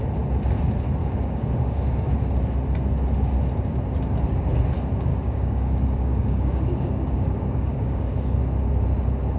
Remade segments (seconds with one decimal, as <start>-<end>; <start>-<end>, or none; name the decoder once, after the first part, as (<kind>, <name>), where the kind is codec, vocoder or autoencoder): 1.0-2.1 (codec, DAC); 5.1-8.1

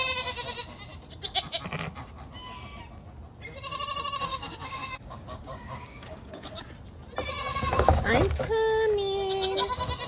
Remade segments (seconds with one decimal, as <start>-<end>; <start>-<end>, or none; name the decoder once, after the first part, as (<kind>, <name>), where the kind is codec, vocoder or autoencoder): 4.3-6.5 (codec, DAC); 7.5-8.1

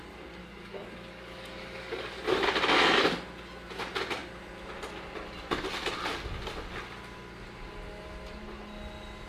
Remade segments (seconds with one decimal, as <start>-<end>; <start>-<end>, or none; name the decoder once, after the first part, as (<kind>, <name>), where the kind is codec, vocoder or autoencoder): 0.4-2.2 (codec, DAC)

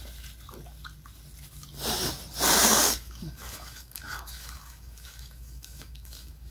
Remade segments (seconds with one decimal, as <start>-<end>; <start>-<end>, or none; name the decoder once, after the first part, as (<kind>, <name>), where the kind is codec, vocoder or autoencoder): 2.7-6.5 (codec, DAC)

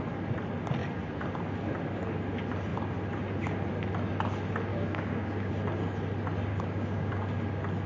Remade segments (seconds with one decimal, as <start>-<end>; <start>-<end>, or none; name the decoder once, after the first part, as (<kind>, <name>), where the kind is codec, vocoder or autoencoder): 4.7-5.5 (codec, DAC); 6.5-7.2

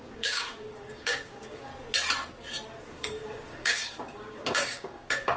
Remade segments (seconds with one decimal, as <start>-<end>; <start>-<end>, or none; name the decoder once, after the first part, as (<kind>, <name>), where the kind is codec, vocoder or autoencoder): 0.0-1.7 (codec, DAC); 2.9-5.4

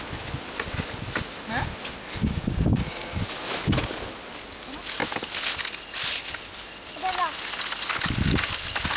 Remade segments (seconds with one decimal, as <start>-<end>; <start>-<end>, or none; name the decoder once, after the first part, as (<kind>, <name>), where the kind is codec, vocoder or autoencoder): 2.2-3.2 (codec, DAC)